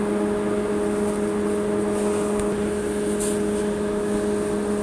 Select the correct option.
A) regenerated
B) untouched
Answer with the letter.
B